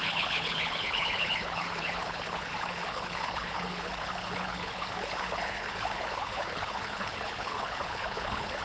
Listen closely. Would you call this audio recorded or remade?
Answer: remade